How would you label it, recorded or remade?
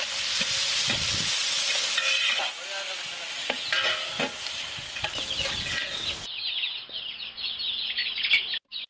recorded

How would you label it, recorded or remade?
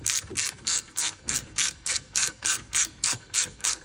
remade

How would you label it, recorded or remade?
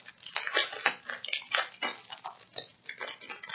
recorded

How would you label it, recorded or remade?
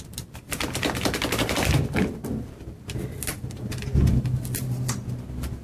remade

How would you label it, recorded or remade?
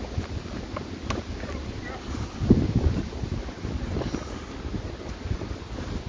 recorded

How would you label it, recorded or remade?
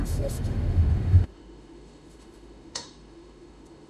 remade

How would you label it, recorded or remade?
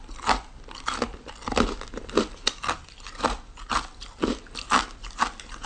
recorded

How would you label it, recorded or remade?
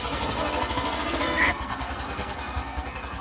remade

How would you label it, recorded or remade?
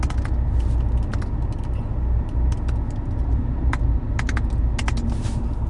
recorded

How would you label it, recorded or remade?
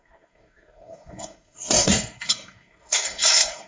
remade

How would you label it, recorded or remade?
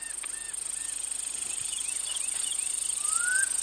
recorded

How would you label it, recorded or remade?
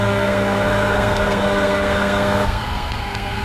remade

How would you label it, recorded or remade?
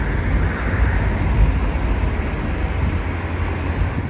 recorded